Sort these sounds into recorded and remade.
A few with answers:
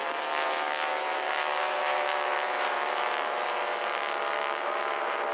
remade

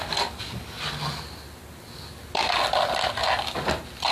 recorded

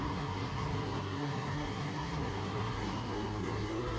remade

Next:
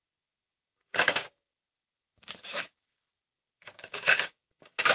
remade